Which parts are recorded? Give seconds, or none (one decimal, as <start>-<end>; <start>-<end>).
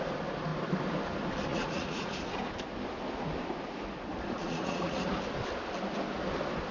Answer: 0.0-1.5; 2.3-4.4; 5.1-6.7